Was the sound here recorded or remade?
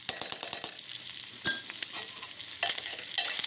recorded